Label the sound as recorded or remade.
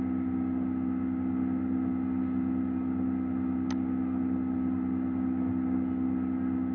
recorded